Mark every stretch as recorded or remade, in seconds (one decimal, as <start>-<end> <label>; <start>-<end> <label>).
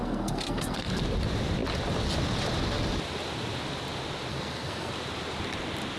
0.0-0.9 remade; 0.9-4.3 recorded; 4.3-4.9 remade; 4.9-6.0 recorded